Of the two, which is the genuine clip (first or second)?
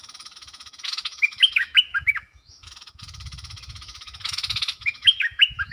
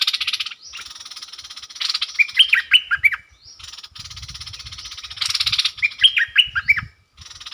second